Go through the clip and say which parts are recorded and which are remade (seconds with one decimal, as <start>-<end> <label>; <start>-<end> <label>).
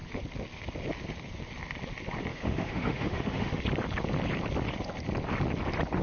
0.0-2.3 recorded; 2.3-3.6 remade; 3.6-6.0 recorded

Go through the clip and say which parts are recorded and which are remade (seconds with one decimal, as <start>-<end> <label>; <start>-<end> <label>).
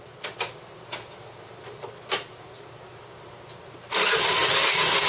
0.0-4.4 recorded; 4.4-5.1 remade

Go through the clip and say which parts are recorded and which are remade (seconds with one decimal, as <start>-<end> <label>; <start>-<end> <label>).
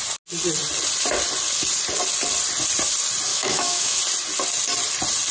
0.0-3.3 recorded; 3.3-4.0 remade; 4.0-5.3 recorded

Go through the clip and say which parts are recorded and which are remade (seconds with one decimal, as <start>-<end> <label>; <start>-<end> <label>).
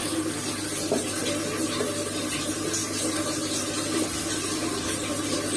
0.0-5.6 recorded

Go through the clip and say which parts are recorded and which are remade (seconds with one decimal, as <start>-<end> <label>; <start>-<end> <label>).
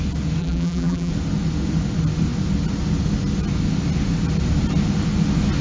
0.0-0.4 recorded; 0.4-1.1 remade; 1.1-5.6 recorded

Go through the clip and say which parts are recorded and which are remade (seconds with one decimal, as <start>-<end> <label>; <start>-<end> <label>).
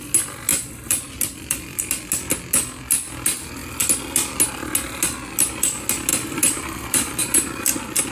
0.0-0.5 recorded; 0.5-1.8 remade; 1.8-6.1 recorded; 6.1-7.2 remade; 7.2-8.1 recorded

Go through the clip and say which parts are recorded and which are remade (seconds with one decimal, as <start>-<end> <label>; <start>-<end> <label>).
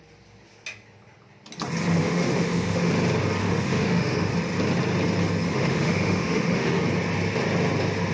0.0-2.0 recorded; 2.0-2.9 remade; 2.9-3.4 recorded; 3.4-4.3 remade; 4.3-5.5 recorded; 5.5-6.8 remade; 6.8-8.1 recorded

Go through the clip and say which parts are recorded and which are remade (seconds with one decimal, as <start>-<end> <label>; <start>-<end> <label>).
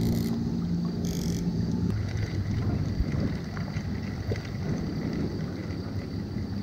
0.0-1.5 recorded; 1.5-2.6 remade; 2.6-6.6 recorded